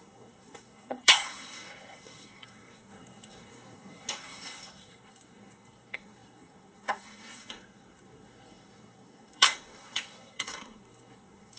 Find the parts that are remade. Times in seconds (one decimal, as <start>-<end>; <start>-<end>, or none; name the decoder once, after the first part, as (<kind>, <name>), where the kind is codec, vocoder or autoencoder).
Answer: 0.0-11.6 (codec, SNAC)